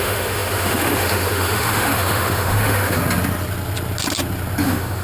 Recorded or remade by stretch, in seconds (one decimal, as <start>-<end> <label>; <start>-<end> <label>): 0.0-3.0 remade; 3.0-4.6 recorded; 4.6-5.0 remade